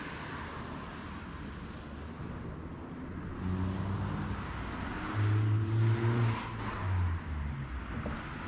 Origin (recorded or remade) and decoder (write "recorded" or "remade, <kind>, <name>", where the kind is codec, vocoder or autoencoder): recorded